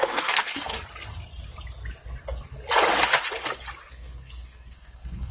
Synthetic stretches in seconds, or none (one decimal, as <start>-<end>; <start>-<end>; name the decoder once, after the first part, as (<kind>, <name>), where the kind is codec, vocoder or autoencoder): 0.0-0.7 (codec, SNAC); 3.9-5.3